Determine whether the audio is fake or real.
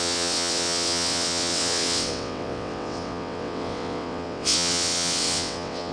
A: fake